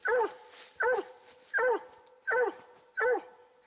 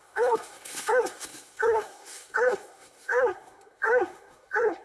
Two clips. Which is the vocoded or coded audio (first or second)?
second